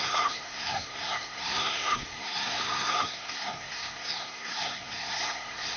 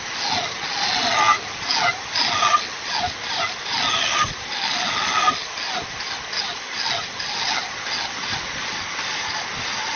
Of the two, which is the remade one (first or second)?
first